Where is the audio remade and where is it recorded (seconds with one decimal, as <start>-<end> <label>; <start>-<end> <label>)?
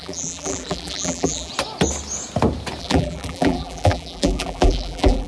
0.0-1.5 remade; 1.5-2.8 recorded; 2.8-5.3 remade